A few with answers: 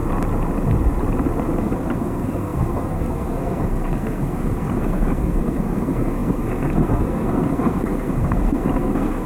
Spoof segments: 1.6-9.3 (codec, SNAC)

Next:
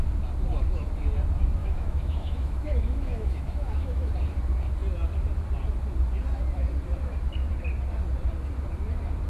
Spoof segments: 1.6-4.1 (autoencoder, DAC-VAE)